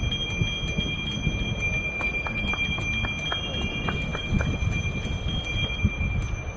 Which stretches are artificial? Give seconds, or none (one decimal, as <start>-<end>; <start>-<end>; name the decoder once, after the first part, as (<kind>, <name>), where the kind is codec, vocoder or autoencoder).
none